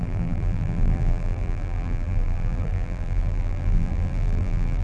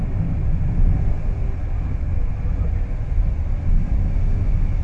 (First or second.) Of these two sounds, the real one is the second